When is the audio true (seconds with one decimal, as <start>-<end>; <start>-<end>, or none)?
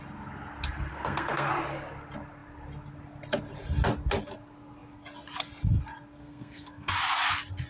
0.0-0.9; 1.5-6.2; 6.9-7.7